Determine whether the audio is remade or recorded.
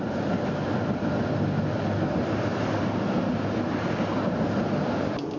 recorded